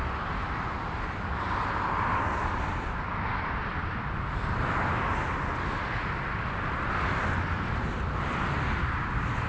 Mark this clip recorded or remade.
recorded